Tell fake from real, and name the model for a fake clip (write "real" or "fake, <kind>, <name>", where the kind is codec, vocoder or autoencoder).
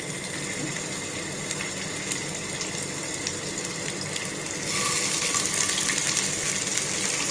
real